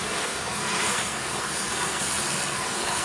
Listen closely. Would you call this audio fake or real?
fake